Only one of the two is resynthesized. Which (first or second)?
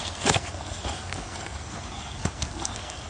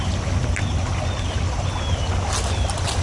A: first